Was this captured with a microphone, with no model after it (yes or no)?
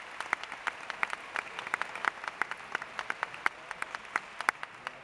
yes